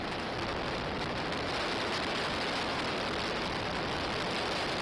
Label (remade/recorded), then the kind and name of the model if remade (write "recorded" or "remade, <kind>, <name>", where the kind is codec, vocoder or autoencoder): recorded